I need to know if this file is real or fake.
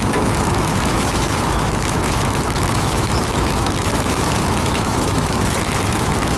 fake